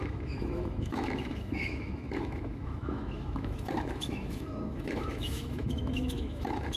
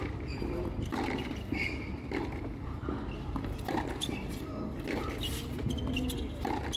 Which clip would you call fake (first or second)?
first